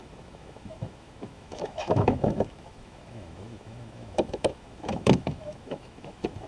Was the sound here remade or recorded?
remade